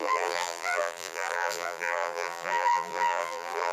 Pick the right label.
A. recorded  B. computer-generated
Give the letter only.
B